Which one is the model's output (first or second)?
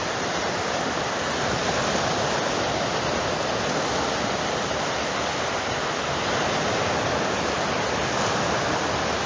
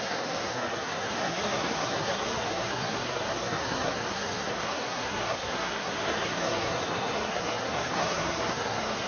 second